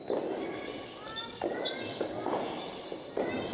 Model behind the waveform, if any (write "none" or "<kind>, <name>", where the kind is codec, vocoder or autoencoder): none